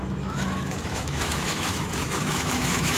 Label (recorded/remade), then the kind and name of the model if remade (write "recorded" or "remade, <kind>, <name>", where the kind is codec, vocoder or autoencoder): remade, autoencoder, DAC-VAE